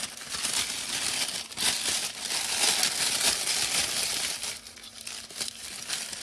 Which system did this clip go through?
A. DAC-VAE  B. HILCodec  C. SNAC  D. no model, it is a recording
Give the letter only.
D